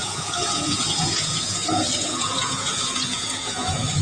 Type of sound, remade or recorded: remade